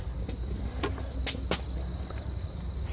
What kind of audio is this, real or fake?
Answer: real